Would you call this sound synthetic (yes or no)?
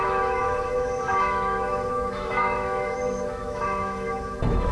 yes